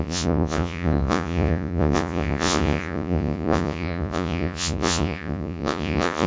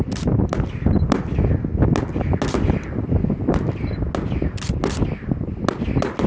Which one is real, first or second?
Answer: second